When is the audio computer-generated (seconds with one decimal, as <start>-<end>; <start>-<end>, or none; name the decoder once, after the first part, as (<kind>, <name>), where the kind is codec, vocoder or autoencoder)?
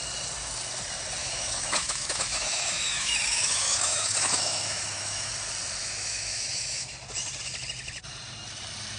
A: 1.2-5.3 (autoencoder, DAC-VAE); 5.8-6.9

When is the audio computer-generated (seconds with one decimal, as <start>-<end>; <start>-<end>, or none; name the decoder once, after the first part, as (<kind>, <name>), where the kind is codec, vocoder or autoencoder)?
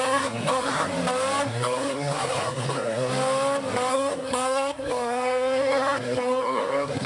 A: 0.0-0.9 (codec, SNAC); 1.4-3.1; 3.9-7.1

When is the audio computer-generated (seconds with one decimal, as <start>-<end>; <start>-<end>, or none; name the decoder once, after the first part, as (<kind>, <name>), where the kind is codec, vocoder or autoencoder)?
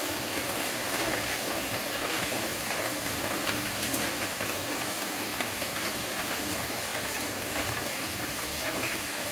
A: 0.0-9.3 (codec, DAC)